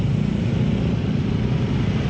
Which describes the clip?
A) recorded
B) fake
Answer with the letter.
A